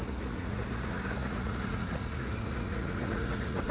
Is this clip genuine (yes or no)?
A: no